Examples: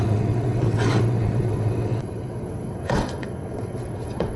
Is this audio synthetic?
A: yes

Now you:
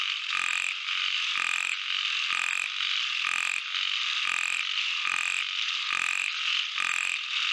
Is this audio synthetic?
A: no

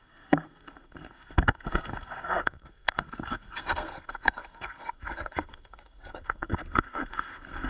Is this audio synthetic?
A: yes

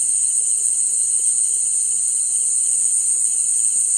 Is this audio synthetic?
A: no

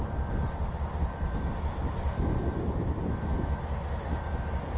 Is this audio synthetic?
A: no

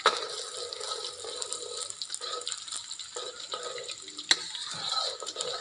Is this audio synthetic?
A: no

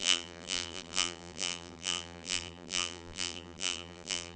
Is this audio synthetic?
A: yes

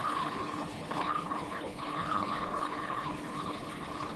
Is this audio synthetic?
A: yes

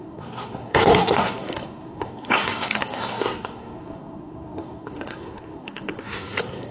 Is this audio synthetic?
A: yes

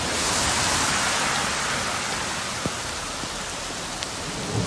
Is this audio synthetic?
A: no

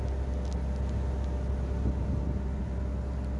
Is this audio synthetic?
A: no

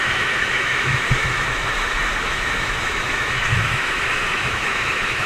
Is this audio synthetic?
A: yes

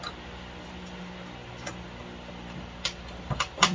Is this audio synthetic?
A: yes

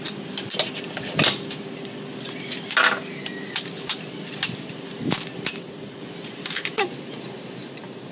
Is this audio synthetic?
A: no